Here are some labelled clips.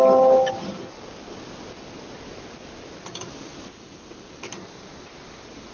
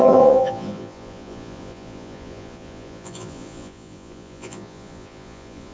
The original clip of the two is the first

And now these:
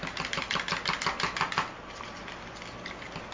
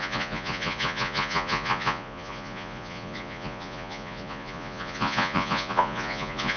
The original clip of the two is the first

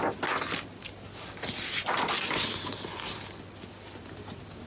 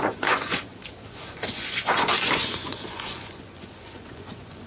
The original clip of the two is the first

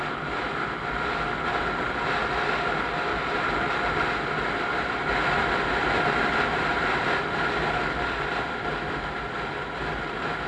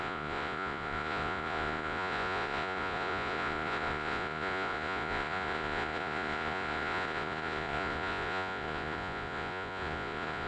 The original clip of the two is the first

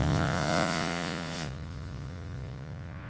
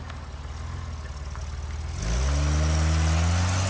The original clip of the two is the second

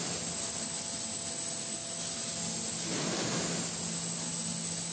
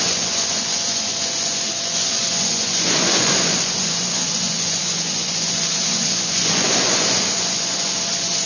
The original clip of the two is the first